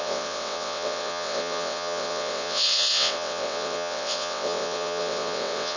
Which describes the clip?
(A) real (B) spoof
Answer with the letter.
B